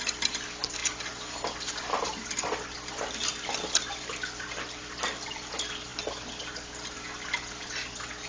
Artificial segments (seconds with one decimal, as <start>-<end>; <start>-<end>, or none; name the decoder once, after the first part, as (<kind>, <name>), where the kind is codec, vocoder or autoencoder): none